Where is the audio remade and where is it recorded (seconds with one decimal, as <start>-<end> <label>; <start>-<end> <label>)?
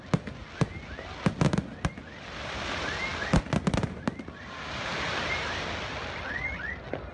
0.0-7.1 recorded